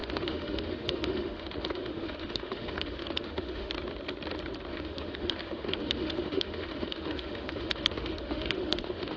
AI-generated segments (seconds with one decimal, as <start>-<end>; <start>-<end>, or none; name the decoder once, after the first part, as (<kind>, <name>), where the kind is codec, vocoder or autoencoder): 0.0-3.7 (autoencoder, DAC-VAE); 4.7-9.2